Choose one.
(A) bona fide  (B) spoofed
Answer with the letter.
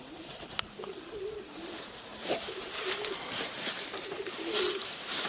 B